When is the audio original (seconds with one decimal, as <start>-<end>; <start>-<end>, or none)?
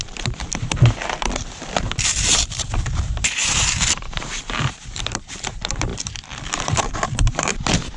none